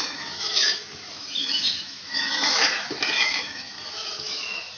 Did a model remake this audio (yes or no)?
yes